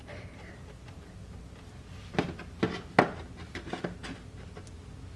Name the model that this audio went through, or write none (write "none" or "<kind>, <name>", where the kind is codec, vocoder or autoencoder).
none